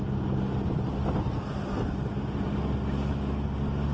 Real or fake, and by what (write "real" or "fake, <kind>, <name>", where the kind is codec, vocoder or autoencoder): real